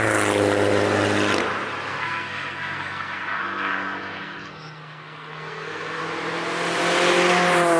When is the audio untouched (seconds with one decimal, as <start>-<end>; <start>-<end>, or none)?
0.0-1.9; 6.0-7.8